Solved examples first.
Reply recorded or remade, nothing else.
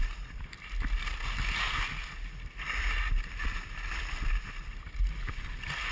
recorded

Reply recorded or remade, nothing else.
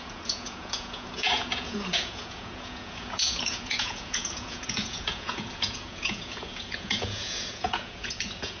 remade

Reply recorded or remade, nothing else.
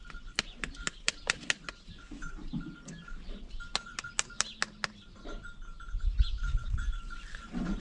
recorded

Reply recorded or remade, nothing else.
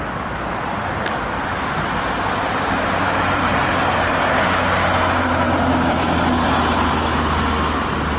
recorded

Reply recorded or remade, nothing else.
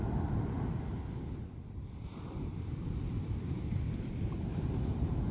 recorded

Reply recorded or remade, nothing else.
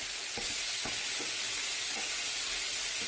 recorded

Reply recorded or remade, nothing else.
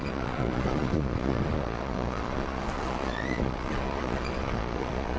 remade